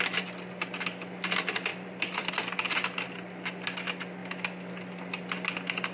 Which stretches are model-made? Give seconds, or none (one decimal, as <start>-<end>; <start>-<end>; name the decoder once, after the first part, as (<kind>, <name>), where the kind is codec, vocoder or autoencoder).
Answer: 1.7-2.4 (vocoder, BigVGAN v2)